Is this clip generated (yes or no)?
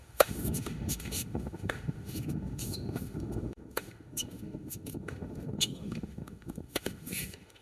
yes